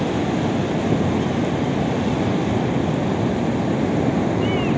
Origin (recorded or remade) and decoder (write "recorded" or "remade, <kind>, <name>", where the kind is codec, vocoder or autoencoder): recorded